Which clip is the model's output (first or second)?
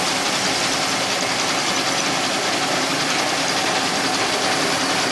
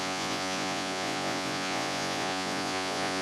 second